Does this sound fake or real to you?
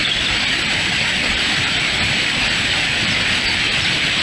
real